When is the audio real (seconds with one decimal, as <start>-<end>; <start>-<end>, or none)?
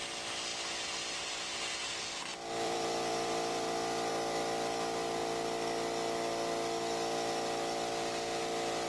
0.0-2.3; 4.1-8.9